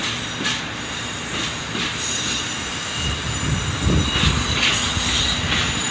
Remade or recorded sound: recorded